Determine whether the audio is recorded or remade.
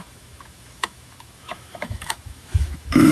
remade